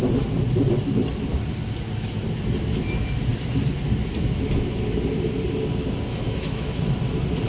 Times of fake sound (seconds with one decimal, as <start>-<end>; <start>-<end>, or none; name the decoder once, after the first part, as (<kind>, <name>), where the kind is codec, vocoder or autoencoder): 6.1-6.7 (autoencoder, DAC-VAE)